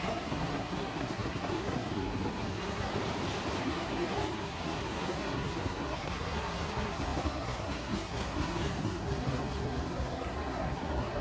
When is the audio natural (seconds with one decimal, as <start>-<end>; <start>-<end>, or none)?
2.9-3.6